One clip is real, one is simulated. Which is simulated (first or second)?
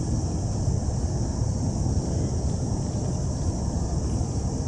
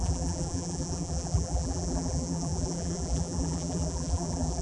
second